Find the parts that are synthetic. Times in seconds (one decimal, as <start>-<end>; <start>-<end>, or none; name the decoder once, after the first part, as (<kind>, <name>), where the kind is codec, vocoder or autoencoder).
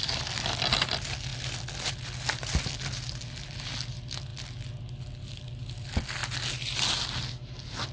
none